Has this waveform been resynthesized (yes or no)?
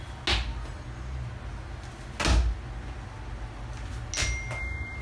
no